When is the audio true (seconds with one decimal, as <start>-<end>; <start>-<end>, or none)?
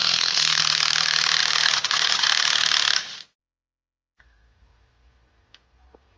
0.6-6.2